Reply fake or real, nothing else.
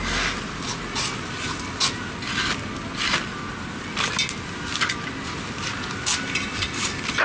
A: real